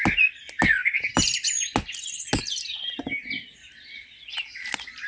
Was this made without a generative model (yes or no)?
yes